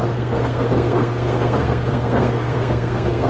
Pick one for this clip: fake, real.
fake